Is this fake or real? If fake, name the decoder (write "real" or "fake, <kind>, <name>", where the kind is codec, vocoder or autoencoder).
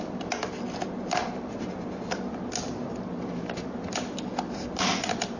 real